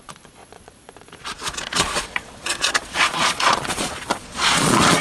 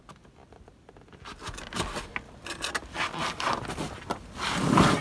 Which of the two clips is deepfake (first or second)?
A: first